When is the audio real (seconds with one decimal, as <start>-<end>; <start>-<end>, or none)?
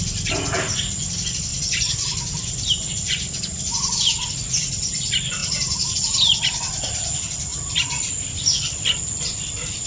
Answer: 0.0-1.5; 4.3-5.4; 5.9-7.5; 8.3-9.9